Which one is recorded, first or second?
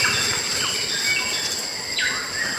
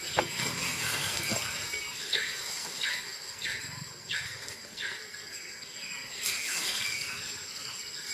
first